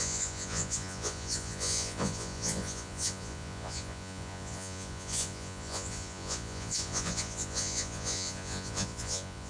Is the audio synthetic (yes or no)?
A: yes